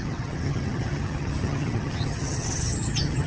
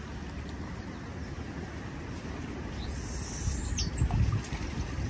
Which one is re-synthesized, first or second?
first